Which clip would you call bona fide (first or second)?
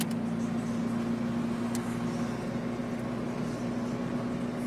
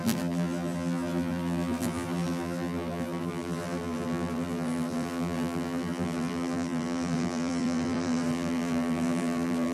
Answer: first